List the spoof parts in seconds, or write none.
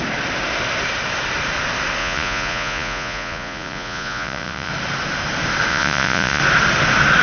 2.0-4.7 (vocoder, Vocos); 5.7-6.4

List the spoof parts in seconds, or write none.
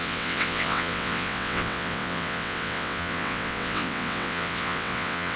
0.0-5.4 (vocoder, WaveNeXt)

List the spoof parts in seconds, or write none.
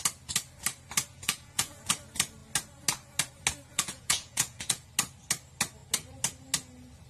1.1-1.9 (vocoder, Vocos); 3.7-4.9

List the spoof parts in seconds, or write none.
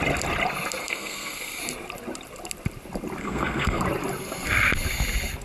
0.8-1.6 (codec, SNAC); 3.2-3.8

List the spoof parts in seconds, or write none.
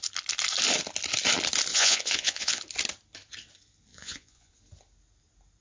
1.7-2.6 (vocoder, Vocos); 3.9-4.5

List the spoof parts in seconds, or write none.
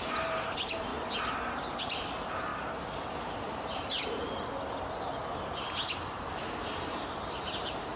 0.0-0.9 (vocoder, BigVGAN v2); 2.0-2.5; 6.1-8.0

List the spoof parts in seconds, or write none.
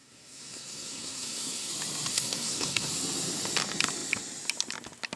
0.0-1.7 (codec, SNAC); 2.1-2.9